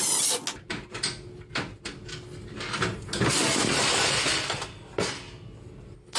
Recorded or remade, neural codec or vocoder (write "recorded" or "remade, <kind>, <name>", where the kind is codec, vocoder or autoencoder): recorded